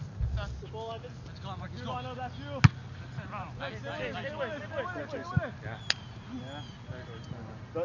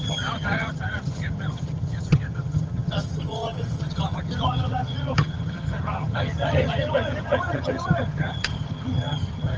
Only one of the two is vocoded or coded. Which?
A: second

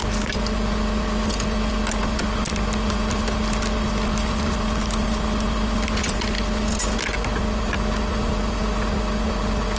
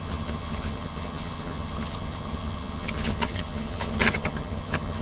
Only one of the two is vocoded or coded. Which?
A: second